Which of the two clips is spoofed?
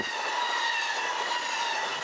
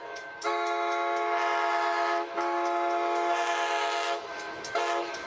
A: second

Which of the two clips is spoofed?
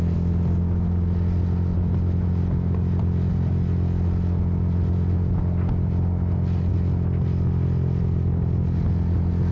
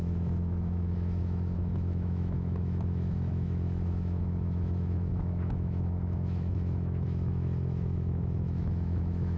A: second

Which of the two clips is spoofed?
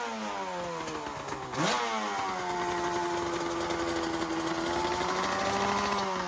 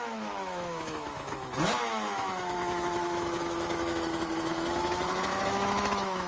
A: second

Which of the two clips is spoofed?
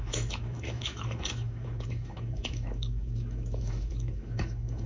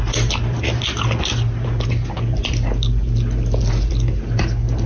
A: first